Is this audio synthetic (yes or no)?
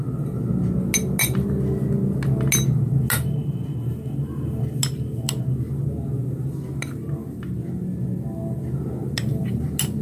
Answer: no